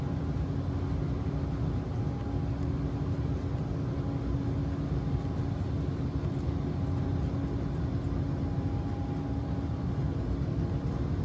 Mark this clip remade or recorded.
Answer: recorded